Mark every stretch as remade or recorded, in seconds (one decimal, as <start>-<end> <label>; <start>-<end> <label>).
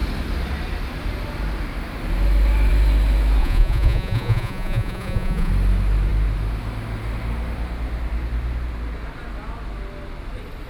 0.0-3.4 recorded; 3.4-5.5 remade; 5.5-10.7 recorded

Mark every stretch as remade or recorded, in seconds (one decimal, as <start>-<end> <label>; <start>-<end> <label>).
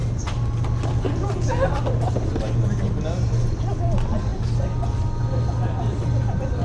0.0-6.6 recorded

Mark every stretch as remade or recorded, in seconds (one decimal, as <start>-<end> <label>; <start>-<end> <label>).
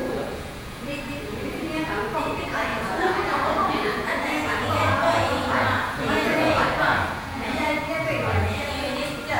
0.0-1.0 remade; 1.0-2.7 recorded; 2.7-7.9 remade; 7.9-9.4 recorded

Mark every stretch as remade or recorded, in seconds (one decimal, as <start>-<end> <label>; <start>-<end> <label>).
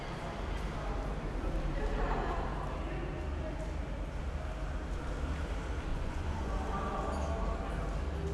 0.0-5.9 recorded; 5.9-6.6 remade; 6.6-8.3 recorded